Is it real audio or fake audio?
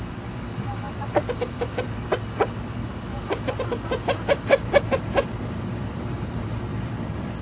fake